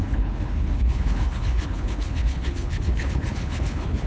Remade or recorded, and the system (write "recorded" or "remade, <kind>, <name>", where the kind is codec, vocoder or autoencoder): remade, codec, HILCodec